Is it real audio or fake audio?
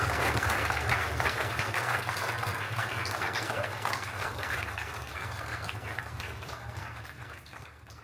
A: fake